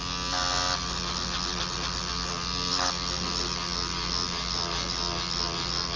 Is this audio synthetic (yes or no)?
no